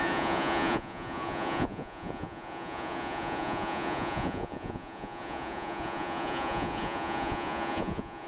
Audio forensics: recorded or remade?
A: remade